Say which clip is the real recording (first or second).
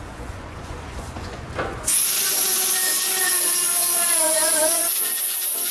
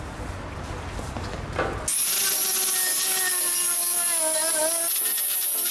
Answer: second